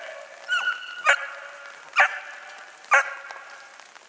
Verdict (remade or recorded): recorded